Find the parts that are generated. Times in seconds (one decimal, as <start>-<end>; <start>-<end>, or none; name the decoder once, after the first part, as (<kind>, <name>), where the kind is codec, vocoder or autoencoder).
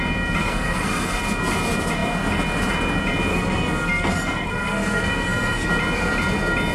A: 0.4-1.2 (codec, SNAC); 3.3-5.7